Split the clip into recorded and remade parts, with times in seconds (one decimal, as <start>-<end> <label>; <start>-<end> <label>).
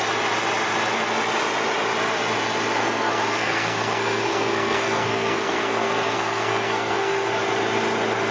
0.0-2.8 recorded; 2.8-7.3 remade; 7.3-8.3 recorded